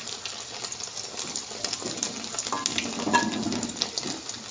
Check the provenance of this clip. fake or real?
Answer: real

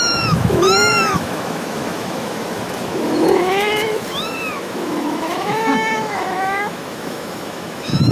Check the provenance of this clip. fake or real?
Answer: fake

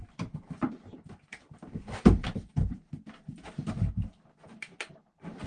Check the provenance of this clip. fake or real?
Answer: real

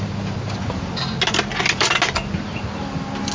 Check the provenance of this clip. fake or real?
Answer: real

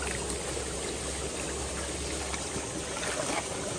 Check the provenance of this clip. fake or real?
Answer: real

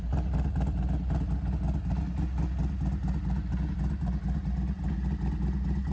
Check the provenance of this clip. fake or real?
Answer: real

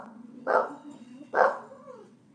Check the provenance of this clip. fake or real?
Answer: fake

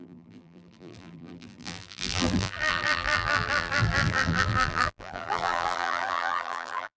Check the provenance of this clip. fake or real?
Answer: fake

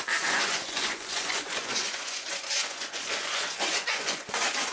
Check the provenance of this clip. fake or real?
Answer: fake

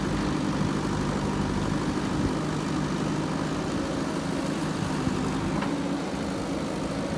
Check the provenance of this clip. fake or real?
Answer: real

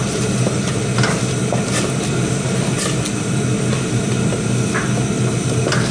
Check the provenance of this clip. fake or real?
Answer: real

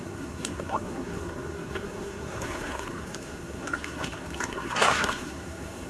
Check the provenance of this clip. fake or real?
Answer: fake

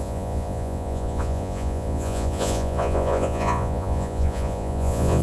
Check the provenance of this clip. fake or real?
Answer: fake